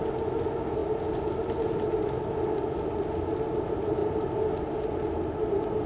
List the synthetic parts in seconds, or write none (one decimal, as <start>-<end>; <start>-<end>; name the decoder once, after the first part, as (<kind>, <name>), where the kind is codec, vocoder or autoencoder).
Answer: none